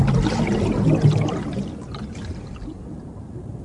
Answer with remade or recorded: recorded